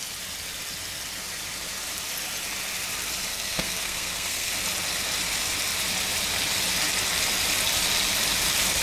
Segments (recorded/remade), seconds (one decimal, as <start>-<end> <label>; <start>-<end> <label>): 0.0-3.3 recorded; 3.3-4.5 remade; 4.5-8.8 recorded